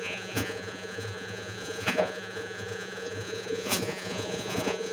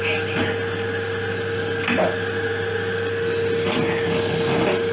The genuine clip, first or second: second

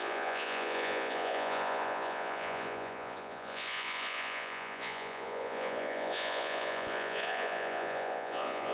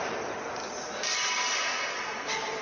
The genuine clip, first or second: second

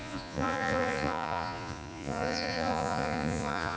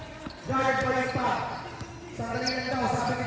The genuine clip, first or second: second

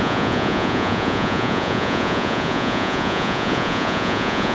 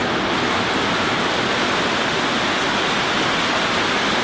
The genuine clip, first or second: second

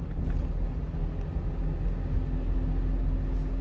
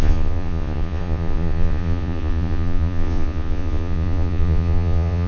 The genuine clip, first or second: first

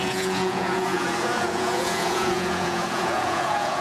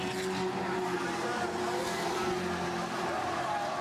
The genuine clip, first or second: second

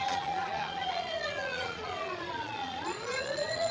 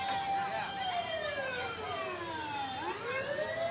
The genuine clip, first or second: second